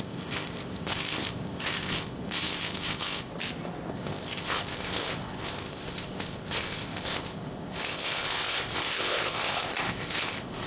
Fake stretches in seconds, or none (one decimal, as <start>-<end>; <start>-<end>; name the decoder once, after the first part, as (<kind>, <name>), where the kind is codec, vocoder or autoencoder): 0.0-3.3 (codec, ZipCodec); 3.9-10.7

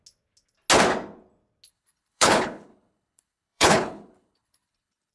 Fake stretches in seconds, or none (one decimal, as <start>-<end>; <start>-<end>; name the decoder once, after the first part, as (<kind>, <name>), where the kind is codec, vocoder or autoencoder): 1.7-5.1 (codec, HILCodec)

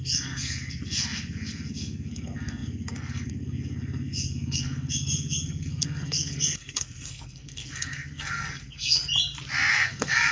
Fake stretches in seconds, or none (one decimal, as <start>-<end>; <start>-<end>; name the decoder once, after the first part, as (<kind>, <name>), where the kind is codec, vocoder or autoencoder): 0.0-9.0 (codec, SNAC); 9.7-10.3

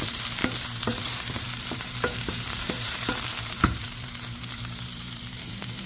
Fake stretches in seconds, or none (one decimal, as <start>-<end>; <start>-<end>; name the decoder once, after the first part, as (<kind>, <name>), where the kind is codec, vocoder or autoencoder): 0.0-5.9 (vocoder, BigVGAN v2)

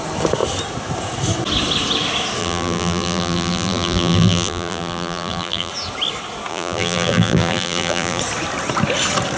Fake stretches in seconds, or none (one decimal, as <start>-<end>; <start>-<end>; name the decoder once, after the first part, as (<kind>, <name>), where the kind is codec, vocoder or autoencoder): 2.4-5.7 (vocoder, BigVGAN v2); 6.5-8.2

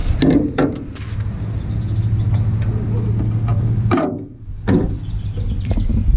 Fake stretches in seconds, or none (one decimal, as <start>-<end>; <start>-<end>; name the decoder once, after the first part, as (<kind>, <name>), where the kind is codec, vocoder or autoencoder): 3.5-5.0 (vocoder, BigVGAN v2)

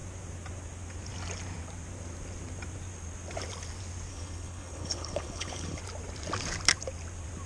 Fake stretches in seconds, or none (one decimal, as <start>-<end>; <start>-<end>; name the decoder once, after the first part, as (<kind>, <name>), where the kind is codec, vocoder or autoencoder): 4.1-5.8 (codec, HILCodec)